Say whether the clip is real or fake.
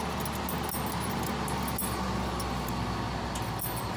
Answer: real